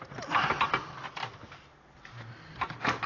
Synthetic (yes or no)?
no